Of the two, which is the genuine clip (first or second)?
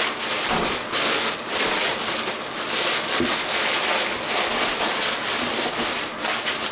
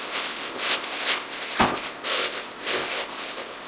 first